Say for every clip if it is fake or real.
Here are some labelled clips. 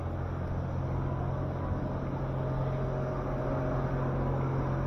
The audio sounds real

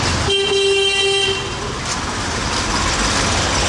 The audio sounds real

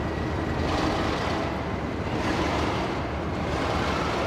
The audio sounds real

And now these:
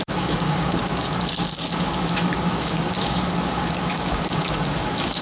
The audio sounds fake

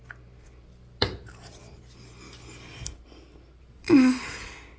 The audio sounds real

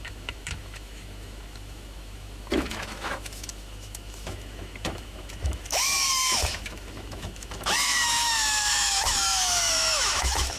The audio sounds fake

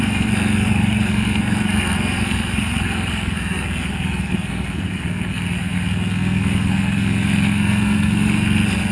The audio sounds fake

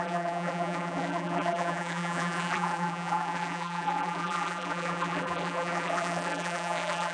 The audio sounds fake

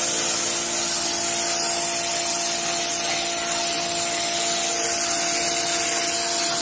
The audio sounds real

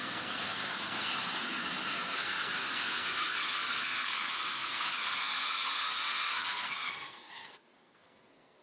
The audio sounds fake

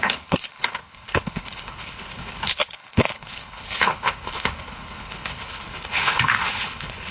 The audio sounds fake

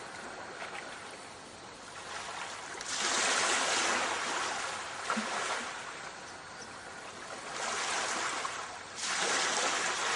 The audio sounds real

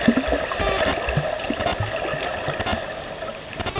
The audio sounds real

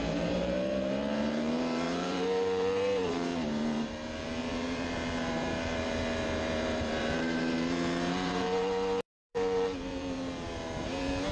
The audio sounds fake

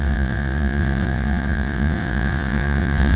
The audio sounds fake